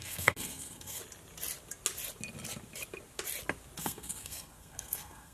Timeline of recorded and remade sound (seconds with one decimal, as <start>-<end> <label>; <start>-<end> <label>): 0.0-1.0 remade; 1.0-3.8 recorded; 3.8-5.3 remade